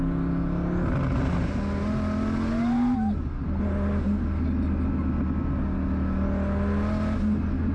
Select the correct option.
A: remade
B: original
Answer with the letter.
B